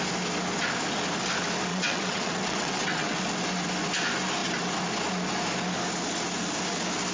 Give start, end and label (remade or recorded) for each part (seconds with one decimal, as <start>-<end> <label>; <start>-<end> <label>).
0.0-1.7 recorded; 1.7-3.2 remade; 3.2-7.1 recorded